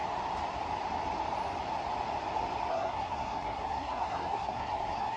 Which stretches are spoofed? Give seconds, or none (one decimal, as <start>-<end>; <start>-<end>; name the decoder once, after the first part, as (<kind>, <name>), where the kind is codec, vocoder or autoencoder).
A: 2.7-5.2 (codec, SNAC)